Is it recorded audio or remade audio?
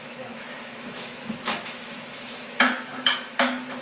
remade